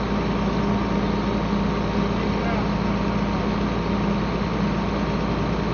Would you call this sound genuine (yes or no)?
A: yes